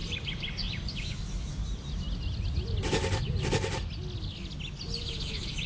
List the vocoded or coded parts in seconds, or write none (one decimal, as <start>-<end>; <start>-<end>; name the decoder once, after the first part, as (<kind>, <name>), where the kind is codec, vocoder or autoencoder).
0.9-1.6 (autoencoder, DAC-VAE); 5.0-5.7